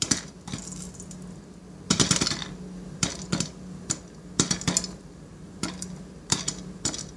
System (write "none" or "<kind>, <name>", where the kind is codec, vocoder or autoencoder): vocoder, BigVGAN v2